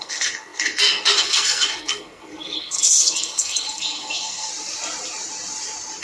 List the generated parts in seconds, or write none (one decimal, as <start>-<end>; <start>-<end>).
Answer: 0.0-4.5